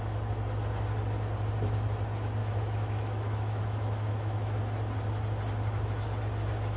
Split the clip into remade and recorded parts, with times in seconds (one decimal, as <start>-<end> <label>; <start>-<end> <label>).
0.0-2.4 recorded; 2.4-4.6 remade; 4.6-6.8 recorded

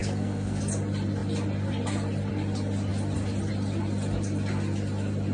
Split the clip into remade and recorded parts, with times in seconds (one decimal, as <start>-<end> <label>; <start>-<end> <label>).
0.0-0.6 remade; 0.6-5.3 recorded

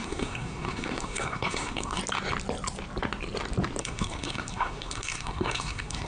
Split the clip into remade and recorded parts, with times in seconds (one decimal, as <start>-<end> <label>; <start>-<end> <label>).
0.0-2.0 remade; 2.0-3.8 recorded; 3.8-6.1 remade

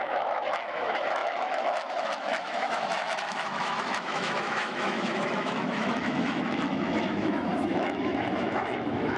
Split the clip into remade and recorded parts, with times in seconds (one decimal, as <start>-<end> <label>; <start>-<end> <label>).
0.0-9.2 remade

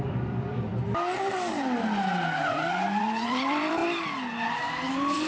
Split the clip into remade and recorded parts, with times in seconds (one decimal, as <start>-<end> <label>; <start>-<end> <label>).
0.0-0.7 remade; 0.7-3.0 recorded; 3.0-3.8 remade; 3.8-4.5 recorded; 4.5-5.3 remade

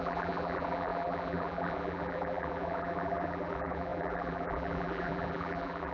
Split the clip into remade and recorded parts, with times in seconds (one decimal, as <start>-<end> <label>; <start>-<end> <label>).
0.0-5.9 remade

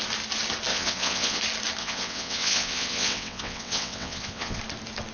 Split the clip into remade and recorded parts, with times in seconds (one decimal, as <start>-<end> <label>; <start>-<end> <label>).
0.0-0.7 recorded; 0.7-1.4 remade; 1.4-1.8 recorded; 1.8-4.6 remade; 4.6-5.1 recorded